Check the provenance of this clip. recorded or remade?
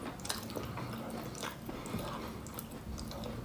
recorded